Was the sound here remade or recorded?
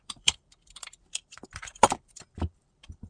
remade